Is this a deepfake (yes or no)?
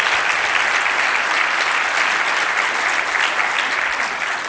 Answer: no